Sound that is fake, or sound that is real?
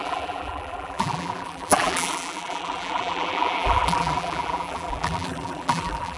fake